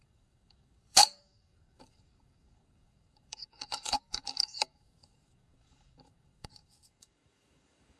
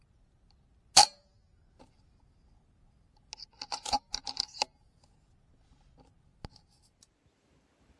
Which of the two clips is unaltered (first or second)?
second